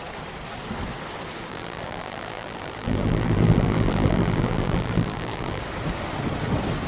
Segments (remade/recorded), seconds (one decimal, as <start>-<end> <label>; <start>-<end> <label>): 0.0-1.5 recorded; 1.5-5.6 remade; 5.6-6.9 recorded